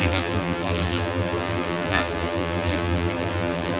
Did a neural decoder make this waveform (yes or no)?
yes